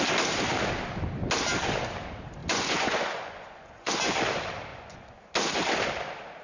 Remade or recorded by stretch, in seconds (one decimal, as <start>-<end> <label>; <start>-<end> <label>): 0.0-2.4 recorded; 2.4-3.9 remade; 3.9-4.7 recorded; 4.7-5.2 remade; 5.2-6.4 recorded